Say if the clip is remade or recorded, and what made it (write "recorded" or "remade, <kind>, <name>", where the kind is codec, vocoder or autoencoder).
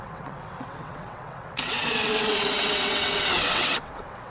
remade, vocoder, WaveNeXt